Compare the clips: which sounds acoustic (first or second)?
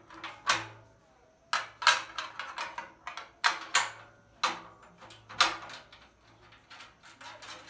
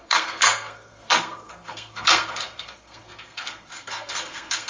first